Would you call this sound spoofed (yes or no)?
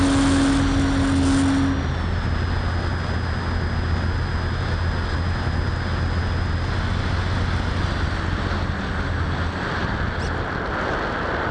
no